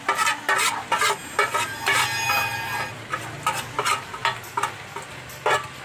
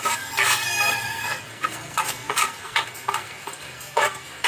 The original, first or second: first